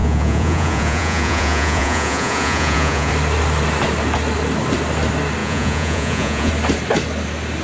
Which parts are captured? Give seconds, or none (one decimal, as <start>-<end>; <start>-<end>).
3.1-5.4; 6.5-7.6